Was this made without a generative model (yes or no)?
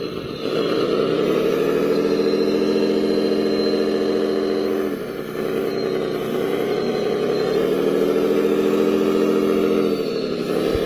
yes